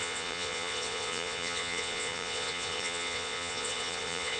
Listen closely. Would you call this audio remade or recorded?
remade